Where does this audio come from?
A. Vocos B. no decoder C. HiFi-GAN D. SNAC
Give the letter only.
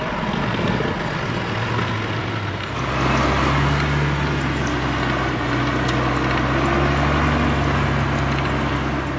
B